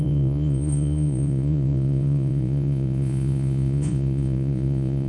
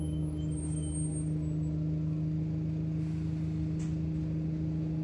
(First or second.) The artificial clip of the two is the first